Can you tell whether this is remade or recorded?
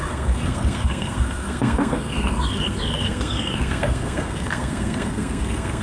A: remade